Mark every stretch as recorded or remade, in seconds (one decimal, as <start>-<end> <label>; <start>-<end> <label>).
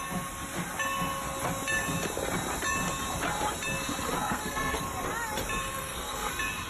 0.0-4.2 recorded; 4.2-4.8 remade; 4.8-5.7 recorded; 5.7-6.3 remade; 6.3-6.7 recorded